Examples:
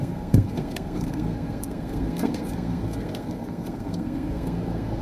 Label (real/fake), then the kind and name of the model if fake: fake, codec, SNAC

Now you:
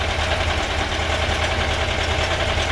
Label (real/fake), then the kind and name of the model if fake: real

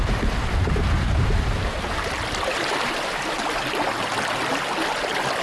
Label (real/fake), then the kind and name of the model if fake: real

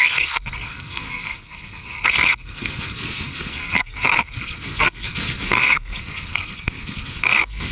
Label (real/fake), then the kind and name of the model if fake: fake, codec, SNAC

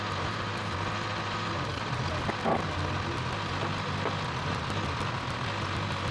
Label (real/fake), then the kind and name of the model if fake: real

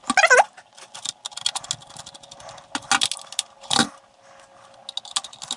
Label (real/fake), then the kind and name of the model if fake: real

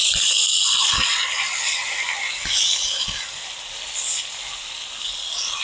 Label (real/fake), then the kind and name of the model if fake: real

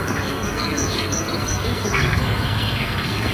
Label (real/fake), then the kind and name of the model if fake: fake, codec, SNAC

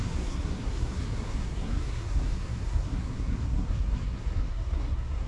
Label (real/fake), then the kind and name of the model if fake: fake, codec, SNAC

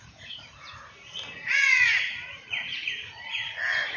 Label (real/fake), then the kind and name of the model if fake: fake, vocoder, Vocos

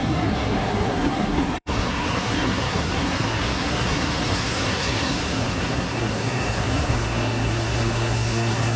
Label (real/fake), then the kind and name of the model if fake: fake, codec, SNAC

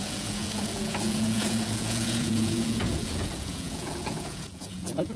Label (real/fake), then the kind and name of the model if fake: fake, vocoder, Vocos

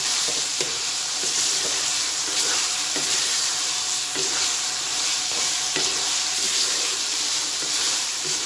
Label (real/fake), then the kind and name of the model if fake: fake, vocoder, BigVGAN v2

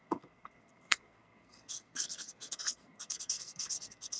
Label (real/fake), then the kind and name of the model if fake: fake, codec, SNAC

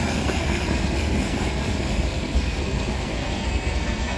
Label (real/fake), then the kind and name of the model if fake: fake, codec, SNAC